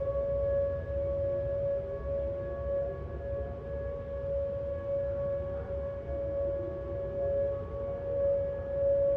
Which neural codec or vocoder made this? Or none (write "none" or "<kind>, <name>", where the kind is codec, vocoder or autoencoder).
none